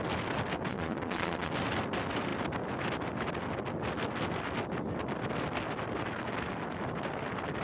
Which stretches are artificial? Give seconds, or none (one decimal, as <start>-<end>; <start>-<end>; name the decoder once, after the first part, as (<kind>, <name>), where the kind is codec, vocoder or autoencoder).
0.7-1.5 (vocoder, Vocos)